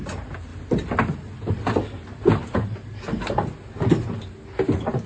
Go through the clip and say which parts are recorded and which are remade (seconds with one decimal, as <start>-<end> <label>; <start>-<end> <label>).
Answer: 0.0-5.1 recorded